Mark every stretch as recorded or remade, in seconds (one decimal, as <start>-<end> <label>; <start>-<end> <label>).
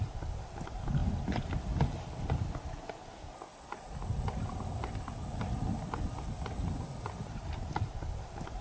0.0-8.6 recorded